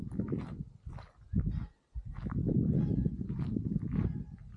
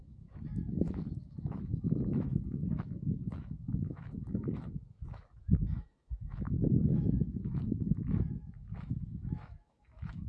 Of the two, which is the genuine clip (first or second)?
first